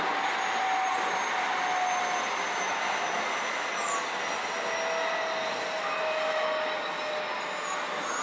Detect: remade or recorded recorded